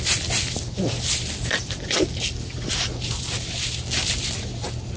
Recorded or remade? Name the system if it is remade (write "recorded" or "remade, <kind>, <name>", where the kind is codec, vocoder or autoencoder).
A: recorded